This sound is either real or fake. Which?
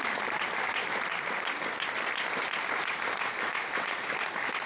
real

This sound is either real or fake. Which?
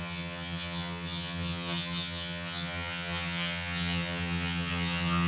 fake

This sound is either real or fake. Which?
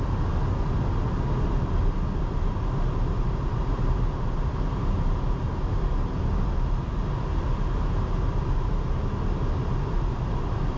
real